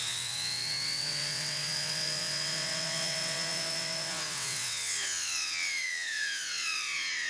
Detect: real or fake fake